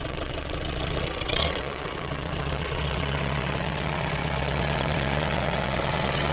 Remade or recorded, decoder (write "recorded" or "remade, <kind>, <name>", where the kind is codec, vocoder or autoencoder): remade, vocoder, WaveNeXt